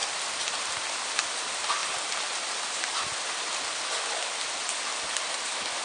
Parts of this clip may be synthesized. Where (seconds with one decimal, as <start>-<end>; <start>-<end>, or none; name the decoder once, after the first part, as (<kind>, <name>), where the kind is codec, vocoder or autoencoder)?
none